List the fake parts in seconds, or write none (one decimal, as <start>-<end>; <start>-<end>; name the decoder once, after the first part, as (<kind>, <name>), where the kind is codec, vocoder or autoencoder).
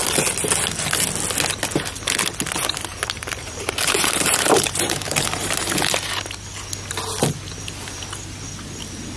2.9-5.6 (vocoder, BigVGAN v2)